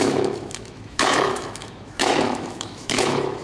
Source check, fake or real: fake